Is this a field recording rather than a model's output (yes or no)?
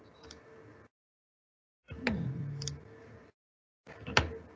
yes